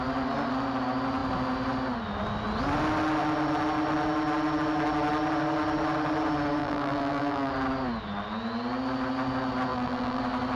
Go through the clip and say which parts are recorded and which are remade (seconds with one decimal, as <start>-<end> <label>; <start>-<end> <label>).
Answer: 0.0-6.6 recorded; 6.6-7.5 remade; 7.5-9.7 recorded; 9.7-10.2 remade; 10.2-10.6 recorded